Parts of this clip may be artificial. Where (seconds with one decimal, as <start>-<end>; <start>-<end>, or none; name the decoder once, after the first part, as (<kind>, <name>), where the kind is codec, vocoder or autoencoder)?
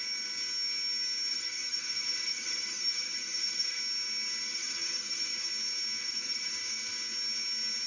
1.3-3.8 (vocoder, HiFi-GAN); 4.5-5.5; 6.0-6.5